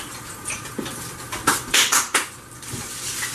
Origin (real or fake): fake